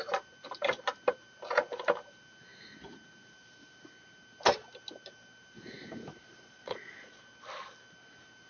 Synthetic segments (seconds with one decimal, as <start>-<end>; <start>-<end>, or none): 6.2-7.2